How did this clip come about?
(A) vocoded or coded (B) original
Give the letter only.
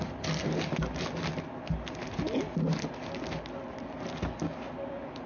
B